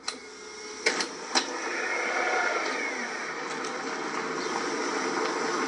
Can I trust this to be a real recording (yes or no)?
yes